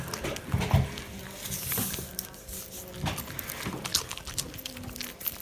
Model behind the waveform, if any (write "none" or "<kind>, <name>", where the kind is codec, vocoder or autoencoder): none